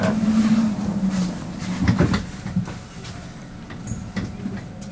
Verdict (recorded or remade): recorded